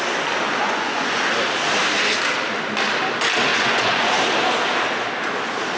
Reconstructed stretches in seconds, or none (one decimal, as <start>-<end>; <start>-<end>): 0.6-1.3; 3.5-4.1